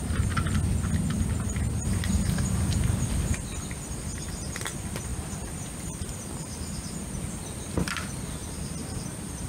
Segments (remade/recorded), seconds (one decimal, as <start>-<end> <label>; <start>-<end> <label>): 0.0-9.5 recorded

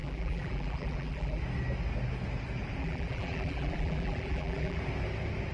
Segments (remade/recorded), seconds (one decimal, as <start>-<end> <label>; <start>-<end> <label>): 0.0-1.4 remade; 1.4-2.8 recorded; 2.8-4.8 remade; 4.8-5.5 recorded

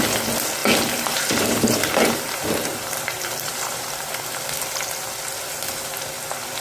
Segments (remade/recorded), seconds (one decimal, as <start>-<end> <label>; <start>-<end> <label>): 0.0-0.6 recorded; 0.6-4.1 remade; 4.1-6.6 recorded